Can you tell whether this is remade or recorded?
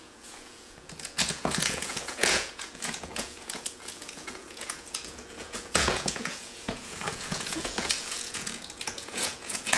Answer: remade